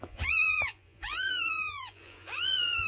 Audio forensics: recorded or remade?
remade